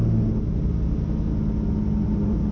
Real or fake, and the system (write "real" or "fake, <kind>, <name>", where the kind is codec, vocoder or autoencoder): real